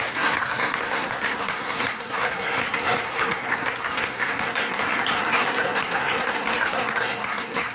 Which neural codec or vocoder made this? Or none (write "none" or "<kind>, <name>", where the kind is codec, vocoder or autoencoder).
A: codec, SNAC